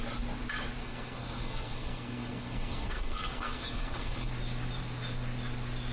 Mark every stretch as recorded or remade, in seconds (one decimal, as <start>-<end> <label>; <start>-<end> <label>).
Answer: 0.0-0.8 recorded; 0.8-4.3 remade; 4.3-5.9 recorded